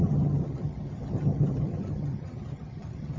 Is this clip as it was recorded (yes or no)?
no